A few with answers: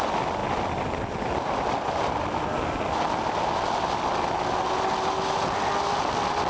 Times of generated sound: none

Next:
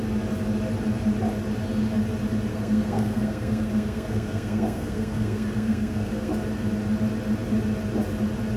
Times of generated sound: 2.5-6.3 (codec, SNAC)